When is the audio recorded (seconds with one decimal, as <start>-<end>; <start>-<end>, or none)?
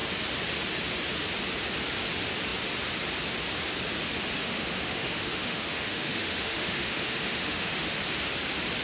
0.0-4.4; 8.0-8.8